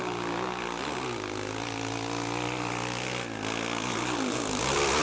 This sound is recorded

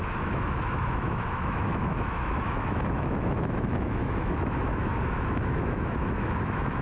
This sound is remade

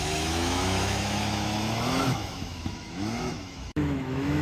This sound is remade